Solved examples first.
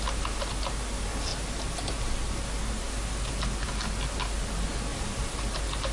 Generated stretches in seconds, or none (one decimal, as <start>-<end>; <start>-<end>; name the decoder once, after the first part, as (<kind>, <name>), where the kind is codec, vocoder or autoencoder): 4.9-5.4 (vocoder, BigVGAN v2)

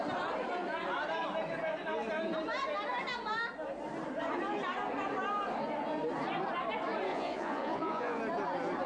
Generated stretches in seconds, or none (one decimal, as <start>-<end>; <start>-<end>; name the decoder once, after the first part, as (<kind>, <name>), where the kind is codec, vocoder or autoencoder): 7.1-8.2 (vocoder, Vocos)

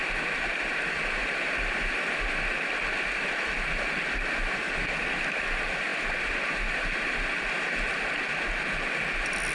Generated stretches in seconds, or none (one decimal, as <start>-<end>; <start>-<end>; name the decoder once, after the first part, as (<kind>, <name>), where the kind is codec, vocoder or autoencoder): none